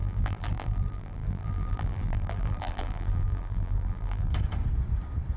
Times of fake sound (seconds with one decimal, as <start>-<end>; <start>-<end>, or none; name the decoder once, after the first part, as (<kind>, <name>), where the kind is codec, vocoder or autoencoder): 0.0-4.3 (vocoder, BigVGAN v2)